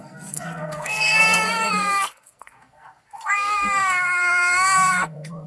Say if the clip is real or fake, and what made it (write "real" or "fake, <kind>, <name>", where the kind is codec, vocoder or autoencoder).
fake, codec, SNAC